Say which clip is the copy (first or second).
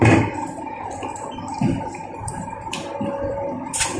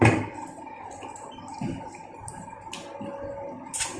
first